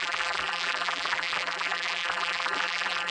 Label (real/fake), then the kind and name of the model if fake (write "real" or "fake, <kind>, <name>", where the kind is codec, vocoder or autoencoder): fake, vocoder, BigVGAN v2